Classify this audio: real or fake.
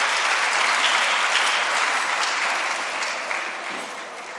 real